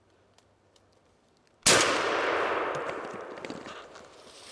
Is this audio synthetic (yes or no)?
no